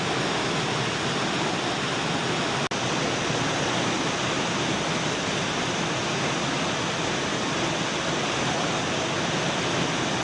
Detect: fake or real real